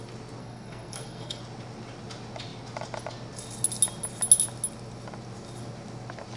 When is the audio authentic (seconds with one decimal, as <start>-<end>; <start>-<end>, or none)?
0.0-0.4; 1.4-6.4